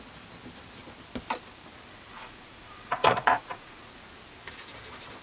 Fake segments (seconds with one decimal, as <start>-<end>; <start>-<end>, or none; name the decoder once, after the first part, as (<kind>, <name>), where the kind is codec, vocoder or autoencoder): 2.1-3.9 (vocoder, Vocos)